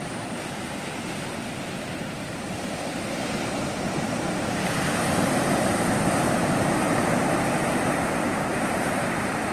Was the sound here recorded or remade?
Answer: remade